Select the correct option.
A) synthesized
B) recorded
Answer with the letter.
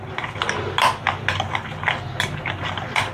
B